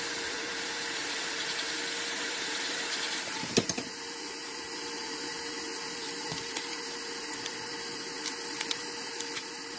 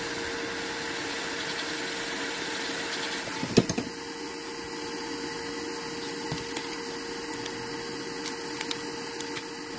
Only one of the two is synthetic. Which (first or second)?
first